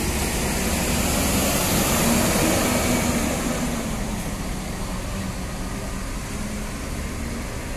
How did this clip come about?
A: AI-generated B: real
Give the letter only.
B